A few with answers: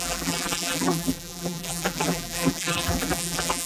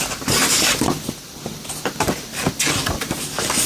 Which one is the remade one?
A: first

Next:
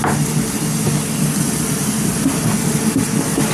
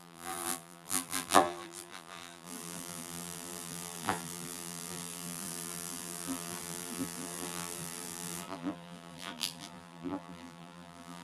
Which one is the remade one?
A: second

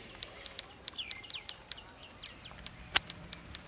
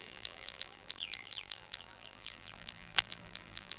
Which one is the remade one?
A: second